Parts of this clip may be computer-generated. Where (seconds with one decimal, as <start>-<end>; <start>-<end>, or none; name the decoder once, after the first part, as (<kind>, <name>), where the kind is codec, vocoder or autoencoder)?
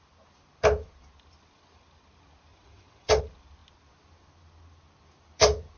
2.5-3.2 (vocoder, WaveNeXt)